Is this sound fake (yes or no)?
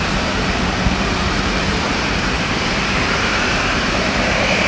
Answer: yes